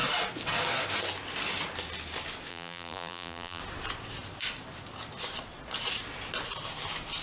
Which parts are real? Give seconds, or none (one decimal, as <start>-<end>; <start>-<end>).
0.0-2.5; 3.6-7.2